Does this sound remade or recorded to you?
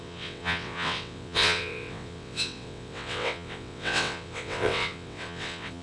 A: remade